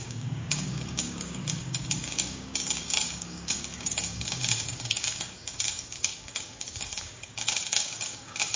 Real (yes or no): no